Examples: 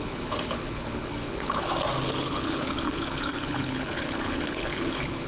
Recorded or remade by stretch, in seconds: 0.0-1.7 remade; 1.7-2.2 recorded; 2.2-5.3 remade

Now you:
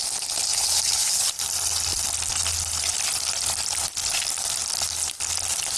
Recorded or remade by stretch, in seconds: 0.0-0.5 recorded; 0.5-1.3 remade; 1.3-5.8 recorded

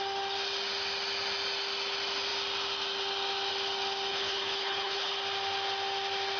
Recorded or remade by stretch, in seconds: 0.0-4.1 recorded; 4.1-5.1 remade; 5.1-6.4 recorded